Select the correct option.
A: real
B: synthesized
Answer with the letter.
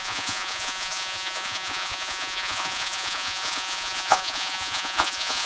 B